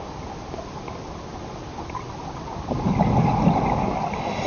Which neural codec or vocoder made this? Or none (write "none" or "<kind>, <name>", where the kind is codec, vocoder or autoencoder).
none